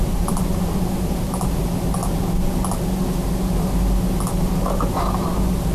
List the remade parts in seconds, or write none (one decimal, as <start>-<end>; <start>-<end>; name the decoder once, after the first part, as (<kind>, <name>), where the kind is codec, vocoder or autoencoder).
0.0-2.0 (vocoder, BigVGAN v2); 5.2-5.7